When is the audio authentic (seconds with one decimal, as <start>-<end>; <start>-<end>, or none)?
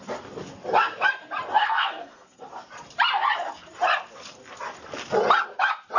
0.0-1.6; 2.5-6.0